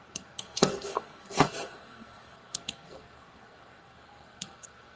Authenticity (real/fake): fake